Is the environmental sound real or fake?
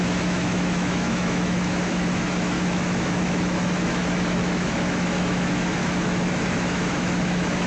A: fake